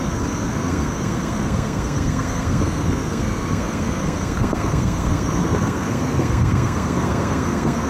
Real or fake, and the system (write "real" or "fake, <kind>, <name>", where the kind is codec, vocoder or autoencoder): fake, codec, SNAC